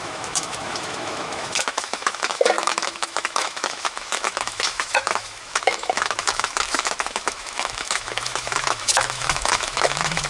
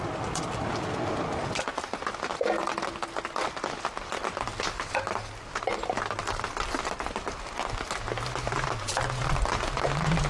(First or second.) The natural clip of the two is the second